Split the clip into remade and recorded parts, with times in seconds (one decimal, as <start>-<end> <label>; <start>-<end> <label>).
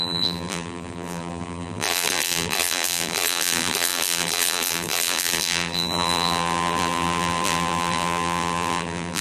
0.0-9.2 remade